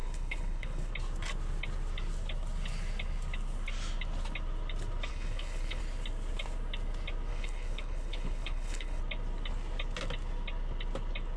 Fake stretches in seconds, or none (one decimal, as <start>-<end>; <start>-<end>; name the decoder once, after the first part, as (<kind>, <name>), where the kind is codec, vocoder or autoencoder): 0.0-0.9 (codec, HILCodec); 5.1-5.8; 7.3-9.0